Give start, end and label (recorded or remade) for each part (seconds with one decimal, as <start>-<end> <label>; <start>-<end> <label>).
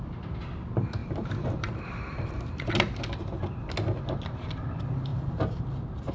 0.0-1.0 recorded; 1.0-2.7 remade; 2.7-5.1 recorded; 5.1-6.1 remade